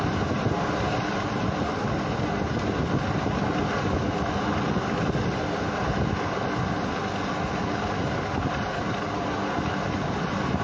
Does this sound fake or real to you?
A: real